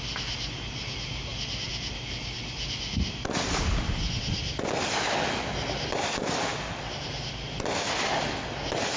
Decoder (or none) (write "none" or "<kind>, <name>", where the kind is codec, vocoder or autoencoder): none